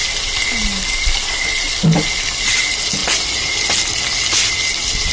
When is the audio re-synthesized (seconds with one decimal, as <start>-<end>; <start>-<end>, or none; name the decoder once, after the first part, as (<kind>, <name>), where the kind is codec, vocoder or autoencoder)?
none